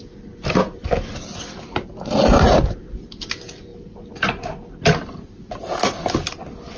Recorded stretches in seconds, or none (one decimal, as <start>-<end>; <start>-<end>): 0.0-6.8